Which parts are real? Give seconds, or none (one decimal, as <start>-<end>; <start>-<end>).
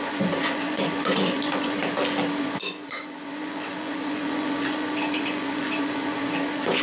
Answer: 1.8-2.4